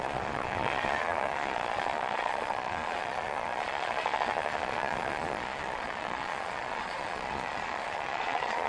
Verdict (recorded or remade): remade